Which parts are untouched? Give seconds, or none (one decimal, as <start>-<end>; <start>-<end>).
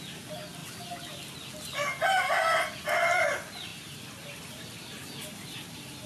0.0-6.1